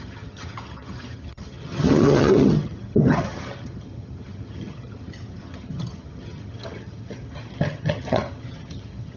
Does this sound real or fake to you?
fake